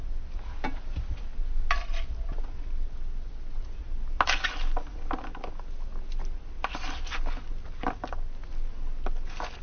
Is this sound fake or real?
real